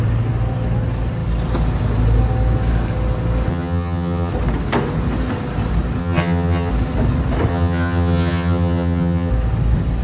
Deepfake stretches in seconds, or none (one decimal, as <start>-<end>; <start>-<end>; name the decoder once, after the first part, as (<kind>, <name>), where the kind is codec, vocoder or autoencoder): 3.5-4.3 (vocoder, HiFi-GAN); 6.0-6.7; 7.5-9.3

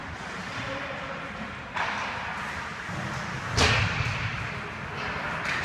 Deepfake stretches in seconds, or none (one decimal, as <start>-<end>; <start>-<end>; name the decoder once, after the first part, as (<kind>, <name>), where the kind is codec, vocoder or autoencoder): 0.0-0.6 (vocoder, BigVGAN v2)

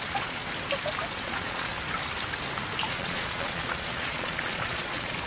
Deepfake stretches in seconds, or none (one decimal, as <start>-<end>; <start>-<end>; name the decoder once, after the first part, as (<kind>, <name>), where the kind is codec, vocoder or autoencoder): 0.0-0.4 (vocoder, Vocos); 1.1-1.7; 2.9-5.3

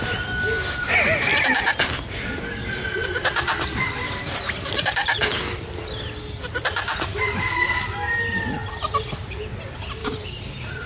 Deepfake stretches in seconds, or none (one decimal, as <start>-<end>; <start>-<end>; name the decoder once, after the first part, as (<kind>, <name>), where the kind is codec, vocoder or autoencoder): 1.3-5.7 (vocoder, BigVGAN v2); 7.1-8.2; 8.6-9.4; 10.0-10.9

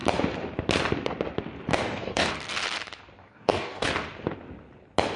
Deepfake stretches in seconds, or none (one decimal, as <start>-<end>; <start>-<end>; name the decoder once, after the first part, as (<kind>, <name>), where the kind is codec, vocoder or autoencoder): 1.7-2.3 (codec, DAC); 3.2-3.9